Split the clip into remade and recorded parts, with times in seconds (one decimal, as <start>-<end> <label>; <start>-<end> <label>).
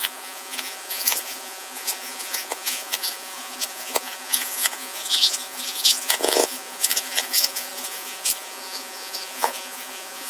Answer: 0.0-10.3 remade